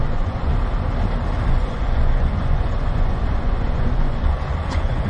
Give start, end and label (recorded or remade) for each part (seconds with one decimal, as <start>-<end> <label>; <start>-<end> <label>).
0.0-0.5 remade; 0.5-1.5 recorded; 1.5-5.1 remade